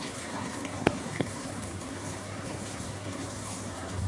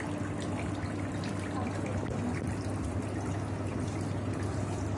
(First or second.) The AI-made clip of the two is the first